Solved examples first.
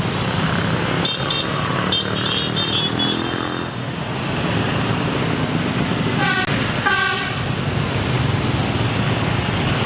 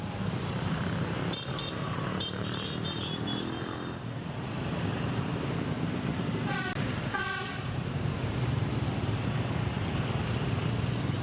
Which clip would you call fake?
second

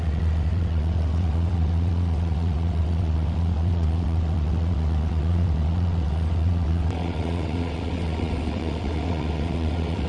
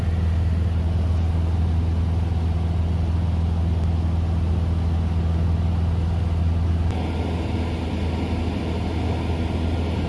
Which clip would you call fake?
first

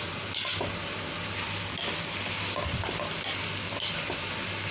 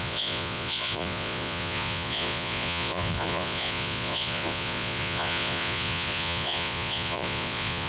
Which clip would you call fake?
second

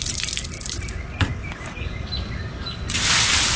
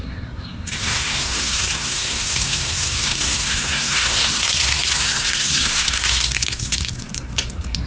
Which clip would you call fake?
second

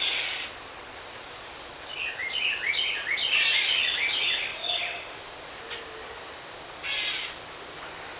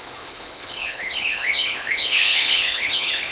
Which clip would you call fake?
second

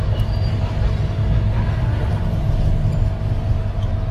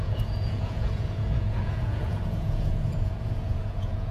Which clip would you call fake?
second